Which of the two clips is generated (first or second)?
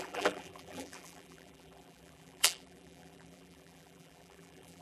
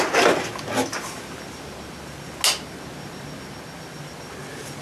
first